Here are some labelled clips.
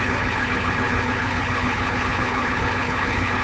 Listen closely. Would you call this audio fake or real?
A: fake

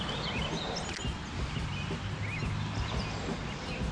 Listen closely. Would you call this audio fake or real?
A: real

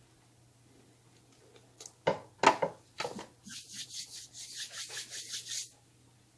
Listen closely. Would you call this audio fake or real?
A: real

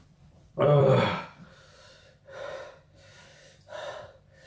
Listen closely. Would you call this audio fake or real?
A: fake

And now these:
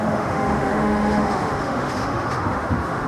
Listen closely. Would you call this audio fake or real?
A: fake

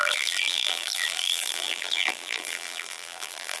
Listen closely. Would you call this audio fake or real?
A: fake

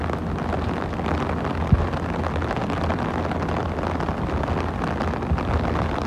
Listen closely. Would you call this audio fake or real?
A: real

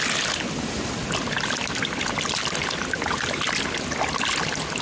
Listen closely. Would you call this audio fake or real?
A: real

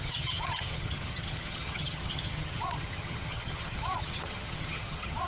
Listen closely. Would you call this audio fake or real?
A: fake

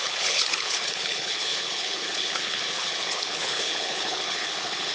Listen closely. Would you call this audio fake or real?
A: fake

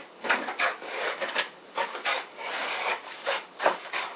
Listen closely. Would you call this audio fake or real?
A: fake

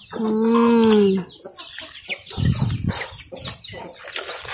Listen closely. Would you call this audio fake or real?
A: real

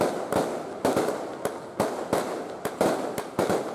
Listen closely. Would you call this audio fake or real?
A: real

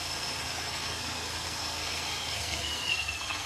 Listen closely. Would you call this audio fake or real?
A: fake